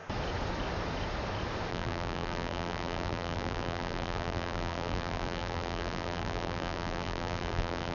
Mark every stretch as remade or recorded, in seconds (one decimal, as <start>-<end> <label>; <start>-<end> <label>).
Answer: 0.0-1.7 recorded; 1.7-7.9 remade